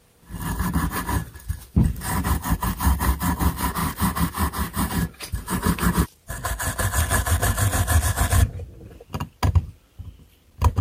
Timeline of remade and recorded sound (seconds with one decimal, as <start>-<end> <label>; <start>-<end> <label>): 0.0-3.8 recorded; 3.8-6.3 remade; 6.3-10.8 recorded